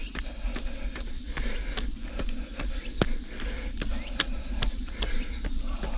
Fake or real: real